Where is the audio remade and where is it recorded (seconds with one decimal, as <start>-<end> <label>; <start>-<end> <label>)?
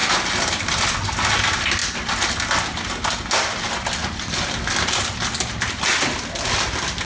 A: 0.0-7.0 recorded